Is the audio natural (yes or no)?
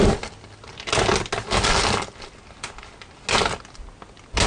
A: yes